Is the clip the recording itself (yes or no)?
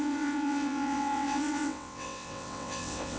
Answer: no